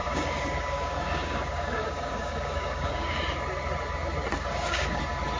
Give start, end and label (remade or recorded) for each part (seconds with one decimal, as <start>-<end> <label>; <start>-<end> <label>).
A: 0.0-3.2 remade; 3.2-4.5 recorded; 4.5-5.0 remade; 5.0-5.4 recorded